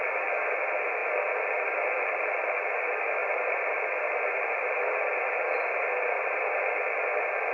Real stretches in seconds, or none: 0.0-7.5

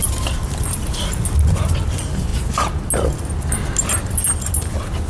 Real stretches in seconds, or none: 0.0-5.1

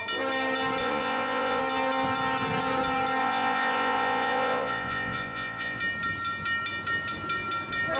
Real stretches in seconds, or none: 0.0-0.8; 1.6-3.2; 5.8-8.0